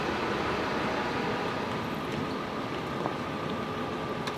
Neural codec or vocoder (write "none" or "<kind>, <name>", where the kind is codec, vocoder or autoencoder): none